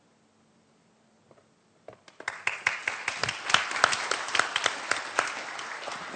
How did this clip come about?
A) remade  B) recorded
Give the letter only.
B